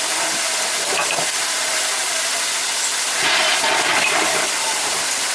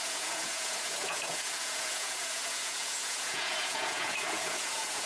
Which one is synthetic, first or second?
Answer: second